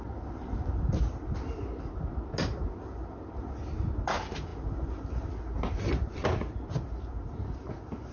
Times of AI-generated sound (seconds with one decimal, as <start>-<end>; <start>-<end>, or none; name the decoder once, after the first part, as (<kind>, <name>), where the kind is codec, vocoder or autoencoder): none